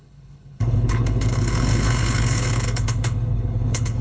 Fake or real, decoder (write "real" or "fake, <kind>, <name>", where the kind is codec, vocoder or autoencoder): fake, codec, HILCodec